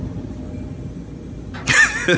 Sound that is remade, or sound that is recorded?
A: recorded